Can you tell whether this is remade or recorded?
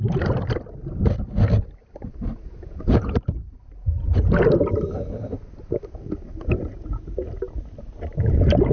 recorded